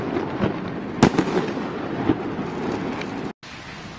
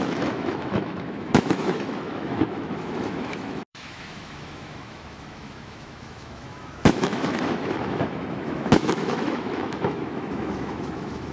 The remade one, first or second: second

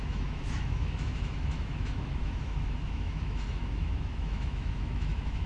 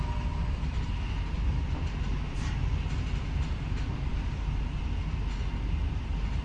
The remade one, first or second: first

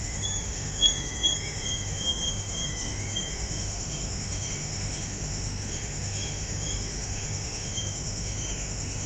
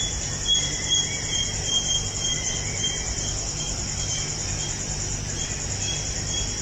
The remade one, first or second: first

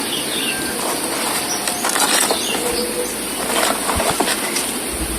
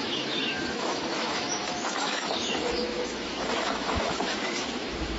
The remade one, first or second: second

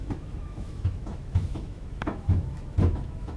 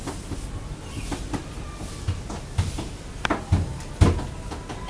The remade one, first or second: first